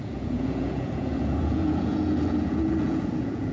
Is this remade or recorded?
remade